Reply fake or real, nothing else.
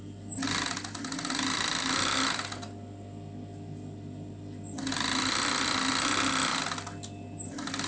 real